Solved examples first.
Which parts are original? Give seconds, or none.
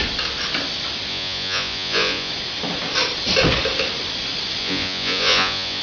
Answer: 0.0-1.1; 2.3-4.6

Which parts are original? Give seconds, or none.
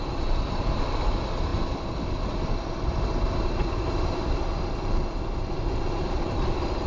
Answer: 0.0-6.9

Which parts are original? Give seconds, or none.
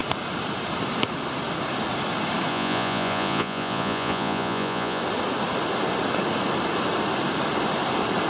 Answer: 0.0-2.5; 5.0-8.3